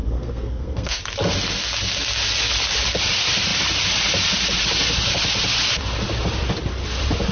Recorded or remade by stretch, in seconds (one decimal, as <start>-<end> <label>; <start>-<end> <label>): 0.0-1.0 remade; 1.0-7.3 recorded

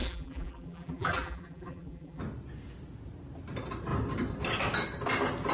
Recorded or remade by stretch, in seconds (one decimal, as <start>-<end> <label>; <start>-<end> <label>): 0.0-2.2 remade; 2.2-5.5 recorded

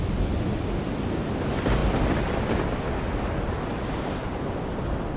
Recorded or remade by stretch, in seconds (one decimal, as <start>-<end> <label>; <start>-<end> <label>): 0.0-5.2 recorded

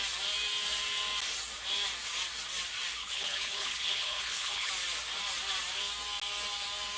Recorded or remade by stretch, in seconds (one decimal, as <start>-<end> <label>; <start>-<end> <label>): 0.0-3.0 recorded; 3.0-4.7 remade; 4.7-7.0 recorded

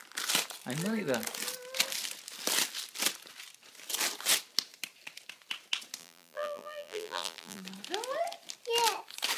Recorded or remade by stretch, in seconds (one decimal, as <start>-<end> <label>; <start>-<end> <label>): 0.0-6.0 recorded; 6.0-7.6 remade; 7.6-9.4 recorded

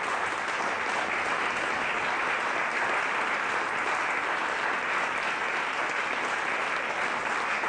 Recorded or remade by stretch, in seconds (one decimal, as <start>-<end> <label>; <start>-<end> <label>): 0.0-7.7 recorded

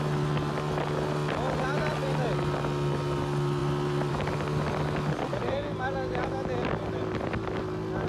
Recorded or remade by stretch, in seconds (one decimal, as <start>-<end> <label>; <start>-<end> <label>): 0.0-8.1 recorded

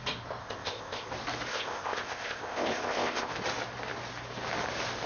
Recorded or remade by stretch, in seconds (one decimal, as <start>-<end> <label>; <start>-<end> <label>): 0.0-0.4 recorded; 0.4-1.1 remade; 1.1-1.5 recorded; 1.5-3.3 remade; 3.3-5.1 recorded